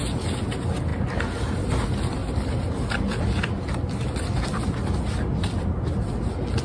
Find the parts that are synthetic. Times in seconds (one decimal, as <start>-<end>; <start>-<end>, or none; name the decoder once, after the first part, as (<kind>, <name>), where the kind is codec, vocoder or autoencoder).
none